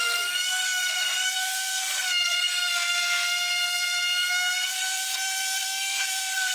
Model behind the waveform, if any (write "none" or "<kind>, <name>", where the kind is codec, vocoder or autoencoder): codec, SNAC